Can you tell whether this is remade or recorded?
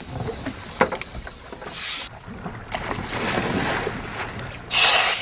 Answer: recorded